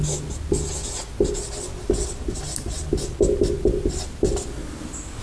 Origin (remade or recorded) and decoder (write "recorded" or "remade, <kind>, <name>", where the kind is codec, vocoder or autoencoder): recorded